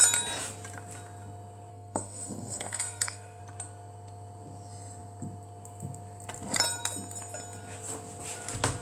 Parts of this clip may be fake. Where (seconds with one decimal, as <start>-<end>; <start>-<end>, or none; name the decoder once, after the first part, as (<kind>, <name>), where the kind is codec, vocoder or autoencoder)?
1.7-3.4 (codec, SNAC)